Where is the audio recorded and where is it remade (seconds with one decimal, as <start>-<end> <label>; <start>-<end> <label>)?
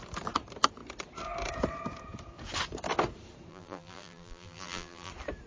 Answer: 0.0-3.5 recorded; 3.5-5.1 remade; 5.1-5.5 recorded